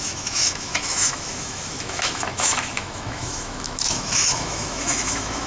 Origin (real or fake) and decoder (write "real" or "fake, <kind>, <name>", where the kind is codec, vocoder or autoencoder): fake, autoencoder, DAC-VAE